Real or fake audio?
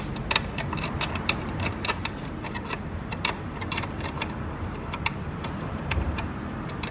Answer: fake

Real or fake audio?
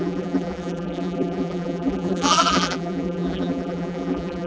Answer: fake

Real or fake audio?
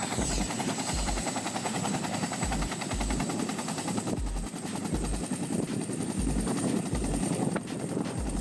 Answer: fake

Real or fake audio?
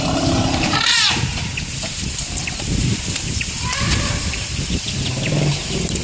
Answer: fake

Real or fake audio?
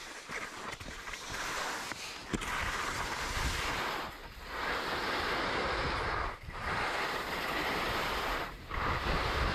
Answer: real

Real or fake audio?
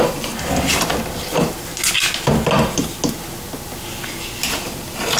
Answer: real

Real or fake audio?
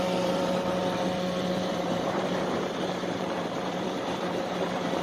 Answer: fake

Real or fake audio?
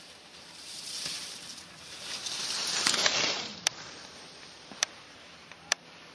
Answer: fake